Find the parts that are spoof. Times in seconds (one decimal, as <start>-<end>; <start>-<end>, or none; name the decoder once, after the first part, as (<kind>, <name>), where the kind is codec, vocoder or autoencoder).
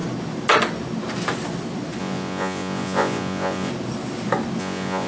2.0-3.7 (vocoder, Vocos); 4.6-5.1